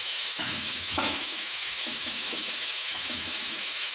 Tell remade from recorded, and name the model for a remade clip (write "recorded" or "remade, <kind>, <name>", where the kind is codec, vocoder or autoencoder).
remade, autoencoder, DAC-VAE